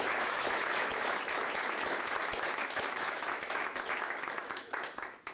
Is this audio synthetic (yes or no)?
yes